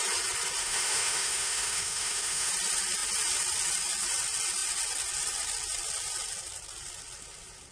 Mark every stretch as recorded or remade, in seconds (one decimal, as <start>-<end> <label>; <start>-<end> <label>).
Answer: 0.0-0.6 recorded; 0.6-2.5 remade; 2.5-7.7 recorded